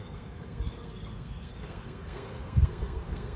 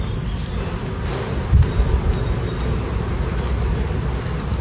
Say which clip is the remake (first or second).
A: first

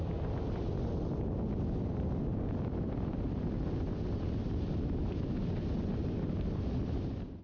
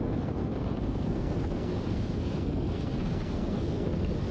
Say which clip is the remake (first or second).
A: second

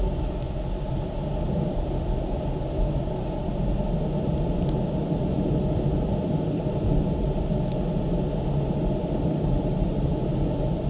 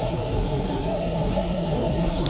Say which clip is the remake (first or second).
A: second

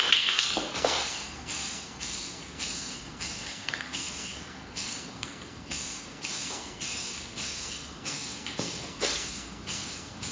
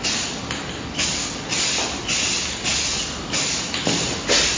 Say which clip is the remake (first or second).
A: first